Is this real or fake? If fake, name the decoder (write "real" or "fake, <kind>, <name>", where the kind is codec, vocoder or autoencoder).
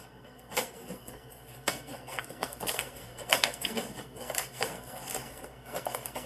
fake, codec, SNAC